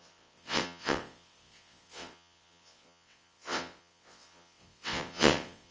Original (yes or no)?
no